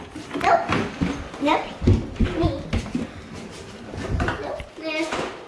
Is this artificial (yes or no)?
no